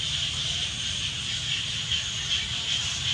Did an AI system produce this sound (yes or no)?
no